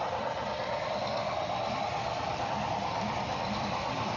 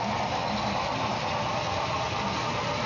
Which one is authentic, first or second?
second